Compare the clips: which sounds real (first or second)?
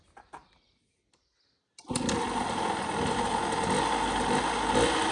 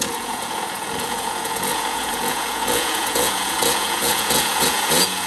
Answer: first